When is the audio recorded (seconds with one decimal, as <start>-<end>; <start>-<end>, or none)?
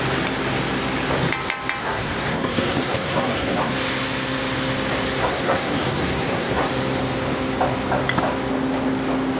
0.0-1.8; 3.7-5.2; 6.7-9.4